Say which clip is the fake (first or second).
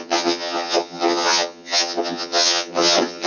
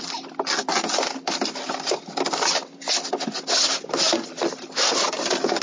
first